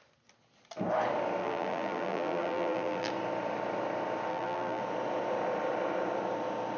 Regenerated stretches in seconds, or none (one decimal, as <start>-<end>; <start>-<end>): 1.4-3.1; 4.3-4.8